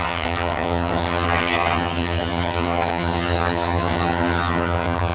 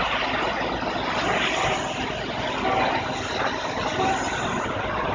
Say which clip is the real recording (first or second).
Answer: second